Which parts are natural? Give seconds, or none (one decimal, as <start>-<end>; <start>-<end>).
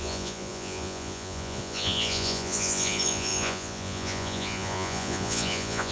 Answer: none